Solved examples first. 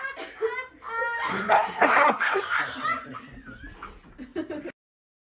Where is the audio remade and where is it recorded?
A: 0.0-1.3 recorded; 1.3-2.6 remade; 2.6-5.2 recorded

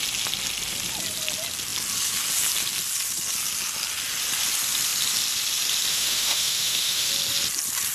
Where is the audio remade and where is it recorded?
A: 0.0-5.9 recorded; 5.9-7.1 remade; 7.1-7.9 recorded

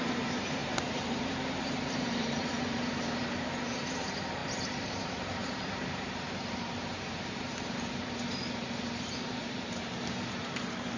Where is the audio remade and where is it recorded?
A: 0.0-11.0 remade

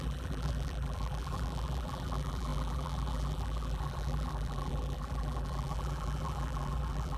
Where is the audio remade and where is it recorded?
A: 0.0-7.2 remade